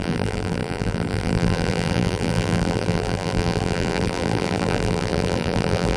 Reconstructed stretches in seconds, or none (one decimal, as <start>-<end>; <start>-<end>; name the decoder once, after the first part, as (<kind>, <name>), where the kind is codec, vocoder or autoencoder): 0.0-6.0 (vocoder, BigVGAN v2)